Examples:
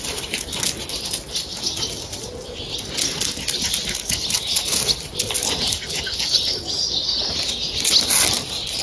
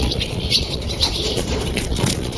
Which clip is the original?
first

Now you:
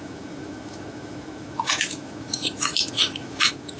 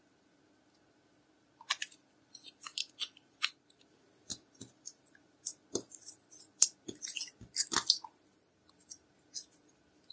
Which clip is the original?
second